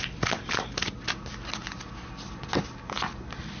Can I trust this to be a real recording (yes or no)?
yes